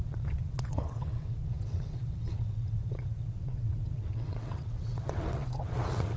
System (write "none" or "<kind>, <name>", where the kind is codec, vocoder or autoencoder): vocoder, WaveNeXt